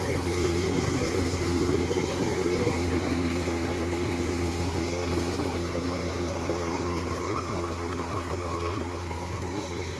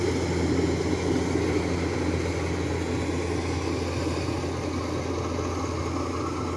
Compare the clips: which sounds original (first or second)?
second